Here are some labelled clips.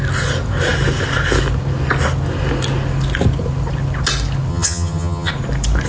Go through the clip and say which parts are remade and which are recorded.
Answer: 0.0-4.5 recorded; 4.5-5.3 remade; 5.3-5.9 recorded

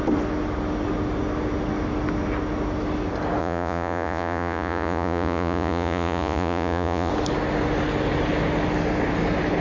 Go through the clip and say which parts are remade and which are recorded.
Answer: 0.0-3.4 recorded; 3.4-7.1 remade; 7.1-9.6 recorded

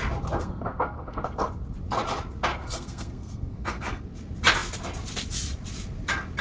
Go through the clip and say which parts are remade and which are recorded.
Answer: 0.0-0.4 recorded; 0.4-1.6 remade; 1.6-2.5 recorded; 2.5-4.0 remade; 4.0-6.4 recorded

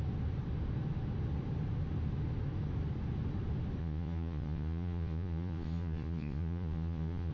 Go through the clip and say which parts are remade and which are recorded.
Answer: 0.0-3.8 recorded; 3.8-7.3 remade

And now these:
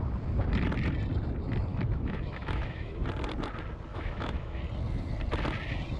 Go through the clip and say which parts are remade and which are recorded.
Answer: 0.0-1.7 recorded; 1.7-3.0 remade; 3.0-3.9 recorded; 3.9-4.6 remade; 4.6-6.0 recorded

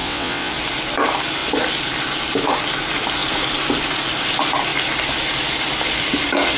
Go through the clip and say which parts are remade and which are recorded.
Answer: 0.0-0.5 remade; 0.5-6.6 recorded

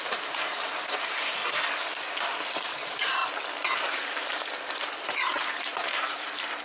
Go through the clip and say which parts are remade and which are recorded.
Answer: 0.0-1.4 remade; 1.4-2.5 recorded; 2.5-3.2 remade; 3.2-3.8 recorded; 3.8-6.6 remade

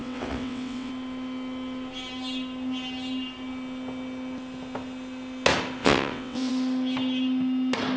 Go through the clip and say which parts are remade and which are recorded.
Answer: 0.0-0.9 remade; 0.9-5.8 recorded; 5.8-6.5 remade; 6.5-8.0 recorded